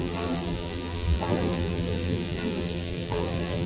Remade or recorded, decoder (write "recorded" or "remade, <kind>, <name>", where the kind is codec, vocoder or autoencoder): remade, vocoder, BigVGAN v2